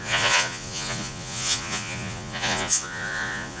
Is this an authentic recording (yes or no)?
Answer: no